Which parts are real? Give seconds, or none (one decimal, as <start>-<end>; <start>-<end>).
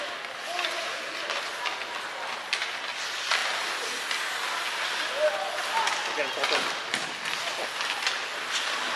0.0-9.0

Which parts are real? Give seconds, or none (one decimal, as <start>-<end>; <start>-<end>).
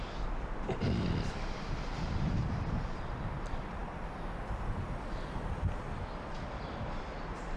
none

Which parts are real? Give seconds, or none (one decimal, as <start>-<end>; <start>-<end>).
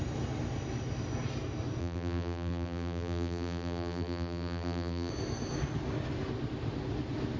0.0-1.8; 5.1-7.4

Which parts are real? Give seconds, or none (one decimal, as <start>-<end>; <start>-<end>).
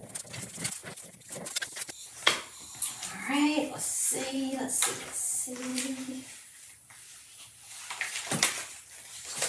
0.0-0.8; 3.3-9.5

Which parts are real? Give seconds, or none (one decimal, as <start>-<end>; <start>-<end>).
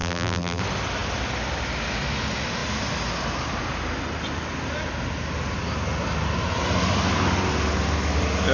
0.6-8.5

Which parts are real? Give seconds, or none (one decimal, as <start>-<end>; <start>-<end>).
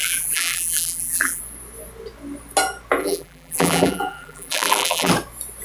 1.4-3.0; 5.1-5.6